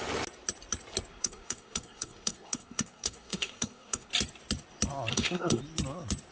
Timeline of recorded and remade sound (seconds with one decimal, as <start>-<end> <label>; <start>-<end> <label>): 0.0-1.1 recorded; 1.1-4.1 remade; 4.1-5.1 recorded; 5.1-5.6 remade; 5.6-6.3 recorded